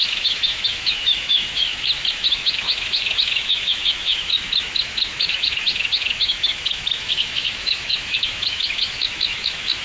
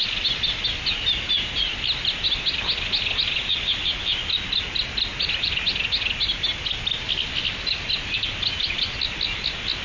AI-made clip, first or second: first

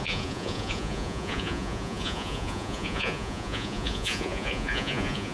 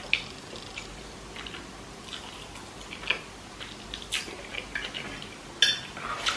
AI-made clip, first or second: first